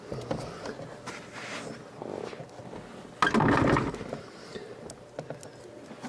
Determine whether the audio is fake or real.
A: real